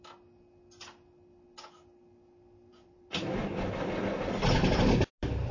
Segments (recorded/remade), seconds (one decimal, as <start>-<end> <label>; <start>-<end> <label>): 0.0-2.7 recorded; 2.7-3.5 remade; 3.5-5.5 recorded